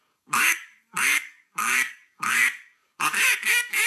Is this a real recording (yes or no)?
no